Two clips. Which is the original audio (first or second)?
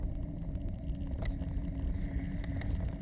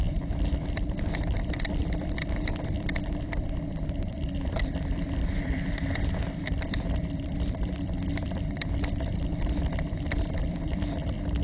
first